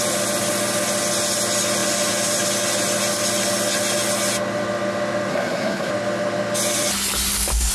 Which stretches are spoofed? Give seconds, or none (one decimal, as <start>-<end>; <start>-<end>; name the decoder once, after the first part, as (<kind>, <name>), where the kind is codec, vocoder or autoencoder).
5.3-5.9 (codec, SNAC)